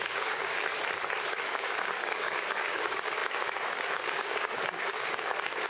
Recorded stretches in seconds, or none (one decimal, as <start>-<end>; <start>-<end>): 0.7-1.3